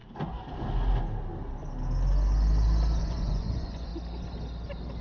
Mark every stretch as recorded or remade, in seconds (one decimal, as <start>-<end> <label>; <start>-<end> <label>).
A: 0.0-3.0 recorded; 3.0-3.9 remade; 3.9-5.0 recorded